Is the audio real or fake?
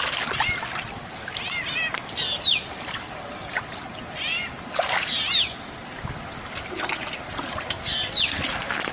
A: real